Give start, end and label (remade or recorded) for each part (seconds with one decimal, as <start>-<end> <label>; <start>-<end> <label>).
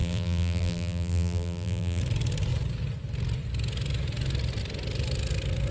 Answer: 0.0-2.0 remade; 2.0-5.7 recorded